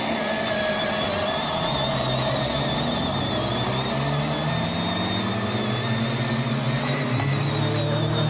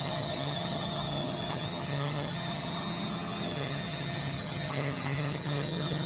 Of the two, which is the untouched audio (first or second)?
first